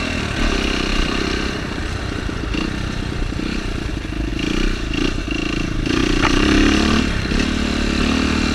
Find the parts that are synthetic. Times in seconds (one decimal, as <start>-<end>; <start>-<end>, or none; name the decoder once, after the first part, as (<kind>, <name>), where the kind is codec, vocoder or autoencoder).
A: 0.9-3.9 (vocoder, BigVGAN v2); 4.3-5.2; 6.0-7.0